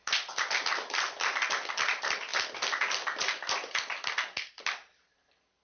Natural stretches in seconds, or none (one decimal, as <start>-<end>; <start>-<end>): 0.0-5.6